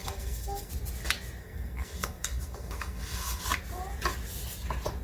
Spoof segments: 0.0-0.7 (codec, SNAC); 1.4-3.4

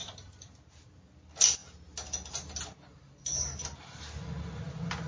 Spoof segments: none

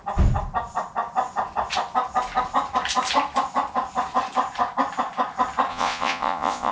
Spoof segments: 5.7-6.7 (vocoder, Vocos)

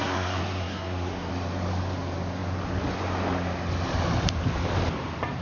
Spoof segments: 0.0-1.3 (codec, SNAC)

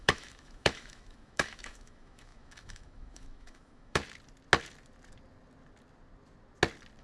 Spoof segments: 0.0-4.0 (autoencoder, DAC-VAE)